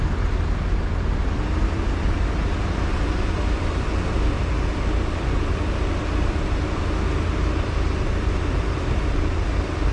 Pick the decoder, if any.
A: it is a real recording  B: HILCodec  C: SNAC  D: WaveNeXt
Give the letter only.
A